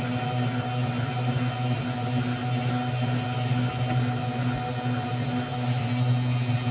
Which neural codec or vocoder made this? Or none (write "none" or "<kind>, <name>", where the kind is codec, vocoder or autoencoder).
none